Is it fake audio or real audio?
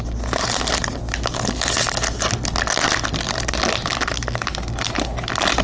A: real